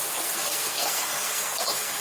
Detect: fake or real fake